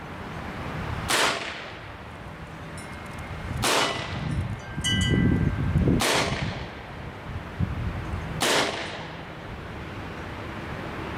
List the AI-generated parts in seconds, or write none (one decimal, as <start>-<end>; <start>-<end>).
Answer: 8.8-9.7